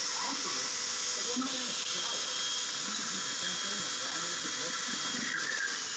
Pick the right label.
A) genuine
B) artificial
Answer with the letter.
A